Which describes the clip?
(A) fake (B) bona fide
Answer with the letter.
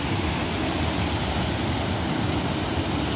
B